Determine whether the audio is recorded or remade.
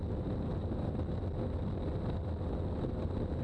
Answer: recorded